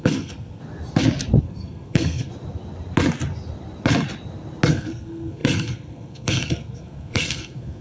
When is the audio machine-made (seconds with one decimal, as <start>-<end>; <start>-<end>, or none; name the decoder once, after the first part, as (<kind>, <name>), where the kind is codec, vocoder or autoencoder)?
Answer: 0.0-0.6 (codec, SNAC); 1.4-2.3; 4.7-7.8